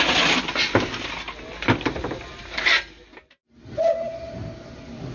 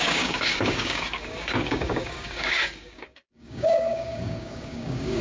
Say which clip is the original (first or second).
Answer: first